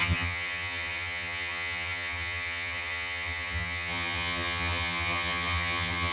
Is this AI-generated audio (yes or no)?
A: yes